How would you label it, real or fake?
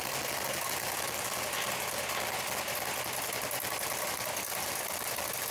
real